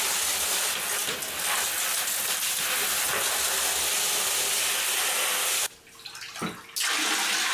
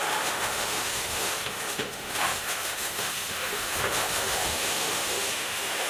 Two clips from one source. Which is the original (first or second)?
first